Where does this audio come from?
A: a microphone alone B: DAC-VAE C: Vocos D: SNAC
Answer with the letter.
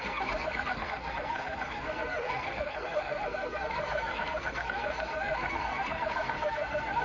D